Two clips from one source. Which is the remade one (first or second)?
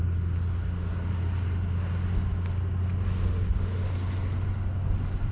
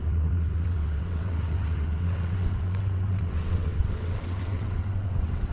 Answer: second